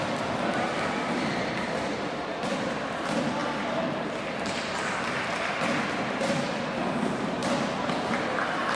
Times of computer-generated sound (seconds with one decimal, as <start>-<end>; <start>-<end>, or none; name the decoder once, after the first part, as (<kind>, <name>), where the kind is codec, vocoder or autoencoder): 0.0-3.4 (vocoder, BigVGAN v2); 6.5-7.4